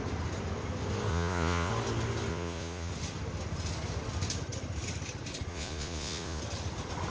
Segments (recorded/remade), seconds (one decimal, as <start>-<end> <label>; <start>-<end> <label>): 0.0-1.1 recorded; 1.1-1.7 remade; 1.7-2.3 recorded; 2.3-2.9 remade; 2.9-5.5 recorded; 5.5-6.4 remade; 6.4-7.1 recorded